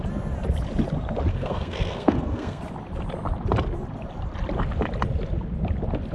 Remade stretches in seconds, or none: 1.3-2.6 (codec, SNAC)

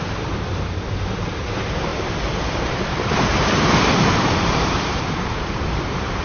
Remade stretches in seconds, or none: 0.0-6.2 (vocoder, BigVGAN v2)

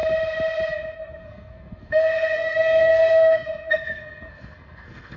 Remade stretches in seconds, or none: 0.9-5.2 (codec, SNAC)

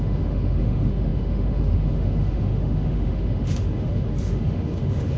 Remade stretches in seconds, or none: 0.0-5.2 (autoencoder, DAC-VAE)

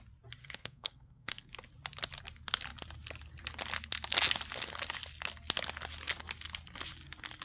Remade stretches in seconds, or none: 0.4-1.5 (codec, SNAC)

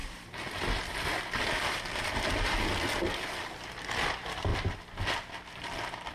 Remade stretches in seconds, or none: none